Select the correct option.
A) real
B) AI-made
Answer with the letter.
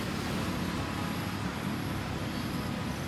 A